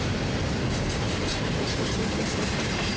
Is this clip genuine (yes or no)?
no